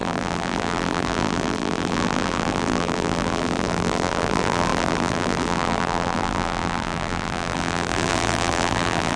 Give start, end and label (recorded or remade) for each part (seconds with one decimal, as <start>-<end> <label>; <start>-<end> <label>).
0.0-9.2 remade